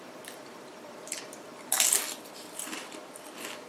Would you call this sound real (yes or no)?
no